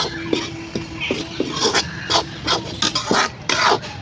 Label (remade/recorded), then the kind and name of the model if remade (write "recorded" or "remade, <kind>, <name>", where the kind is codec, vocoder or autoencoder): recorded